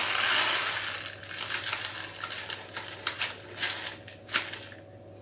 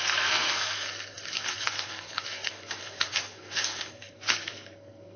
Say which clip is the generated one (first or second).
second